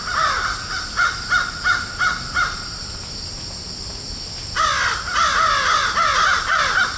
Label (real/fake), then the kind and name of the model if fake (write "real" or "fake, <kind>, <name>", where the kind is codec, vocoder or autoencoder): real